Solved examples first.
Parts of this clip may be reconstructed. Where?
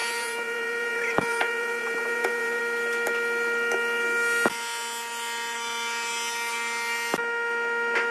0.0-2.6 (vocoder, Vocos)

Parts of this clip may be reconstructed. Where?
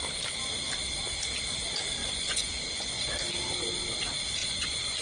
2.0-3.1 (vocoder, Vocos); 4.4-5.0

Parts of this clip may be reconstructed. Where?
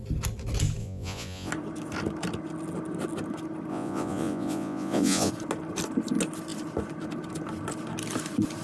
0.8-1.5 (vocoder, Vocos); 3.7-5.3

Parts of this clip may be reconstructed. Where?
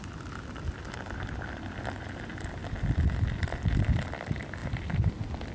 none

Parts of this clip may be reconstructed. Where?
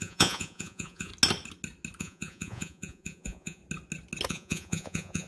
0.0-1.1 (vocoder, Vocos); 2.0-3.6; 4.3-5.3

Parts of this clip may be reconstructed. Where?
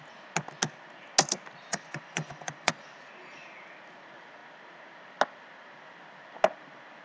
1.7-2.7 (vocoder, Vocos)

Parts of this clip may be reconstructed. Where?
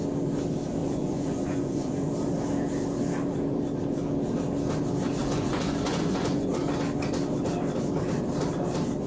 0.8-2.1 (vocoder, Vocos); 5.2-6.5